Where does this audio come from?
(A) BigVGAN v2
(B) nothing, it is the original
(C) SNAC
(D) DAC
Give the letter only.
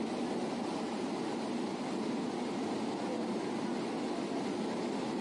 B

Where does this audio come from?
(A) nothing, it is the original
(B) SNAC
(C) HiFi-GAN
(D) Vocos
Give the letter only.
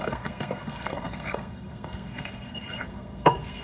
B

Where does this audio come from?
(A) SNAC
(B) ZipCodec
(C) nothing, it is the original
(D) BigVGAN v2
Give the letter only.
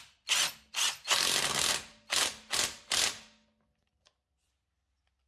C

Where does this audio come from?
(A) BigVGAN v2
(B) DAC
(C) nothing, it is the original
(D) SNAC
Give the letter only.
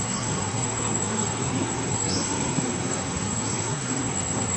D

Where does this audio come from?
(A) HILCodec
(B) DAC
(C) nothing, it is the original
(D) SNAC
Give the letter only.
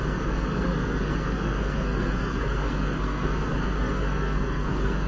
D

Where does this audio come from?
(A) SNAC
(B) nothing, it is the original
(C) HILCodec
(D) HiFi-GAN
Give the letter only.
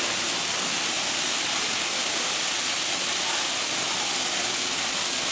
B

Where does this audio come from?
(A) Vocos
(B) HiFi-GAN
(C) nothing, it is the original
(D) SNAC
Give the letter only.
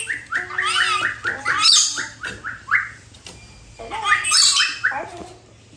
C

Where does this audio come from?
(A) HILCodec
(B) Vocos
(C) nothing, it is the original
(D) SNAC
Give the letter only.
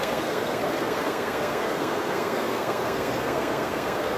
D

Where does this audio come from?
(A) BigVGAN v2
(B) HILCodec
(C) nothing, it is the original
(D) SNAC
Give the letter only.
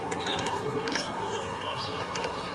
D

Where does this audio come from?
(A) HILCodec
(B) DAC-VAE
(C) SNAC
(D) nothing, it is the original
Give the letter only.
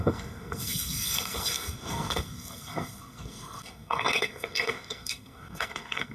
C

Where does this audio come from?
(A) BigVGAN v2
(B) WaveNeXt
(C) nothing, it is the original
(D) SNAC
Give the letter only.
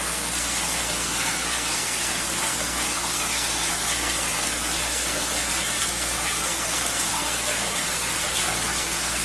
D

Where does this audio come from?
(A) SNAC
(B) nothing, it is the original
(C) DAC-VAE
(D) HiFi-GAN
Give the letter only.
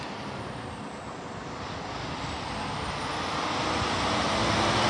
B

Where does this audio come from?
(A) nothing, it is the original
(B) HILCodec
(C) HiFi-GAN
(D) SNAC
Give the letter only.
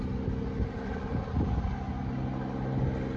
A